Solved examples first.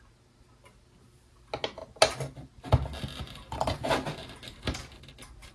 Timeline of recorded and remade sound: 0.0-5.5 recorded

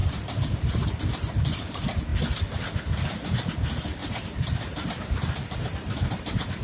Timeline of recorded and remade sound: 0.0-1.0 remade; 1.0-4.0 recorded; 4.0-6.6 remade

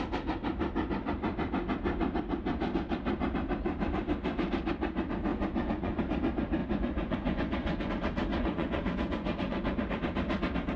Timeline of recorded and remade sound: 0.0-5.3 recorded; 5.3-6.0 remade; 6.0-6.6 recorded; 6.6-7.9 remade; 7.9-8.3 recorded; 8.3-9.8 remade; 9.8-10.8 recorded